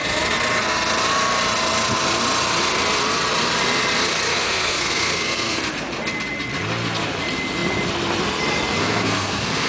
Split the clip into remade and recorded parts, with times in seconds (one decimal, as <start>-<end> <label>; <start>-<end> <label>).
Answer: 0.0-4.3 recorded; 4.3-5.6 remade; 5.6-8.8 recorded; 8.8-9.7 remade